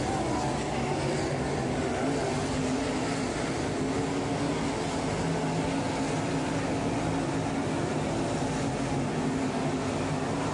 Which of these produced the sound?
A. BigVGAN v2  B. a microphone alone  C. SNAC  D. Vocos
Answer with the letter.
B